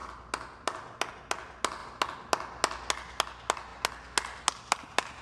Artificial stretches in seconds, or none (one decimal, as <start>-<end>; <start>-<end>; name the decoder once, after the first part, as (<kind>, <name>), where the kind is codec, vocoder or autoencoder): none